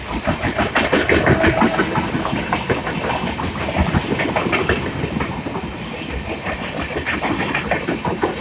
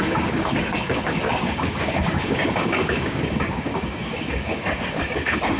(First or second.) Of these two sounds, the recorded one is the first